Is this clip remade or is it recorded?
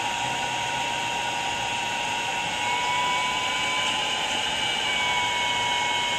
recorded